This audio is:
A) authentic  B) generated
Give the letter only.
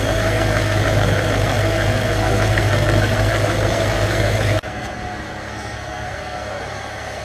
B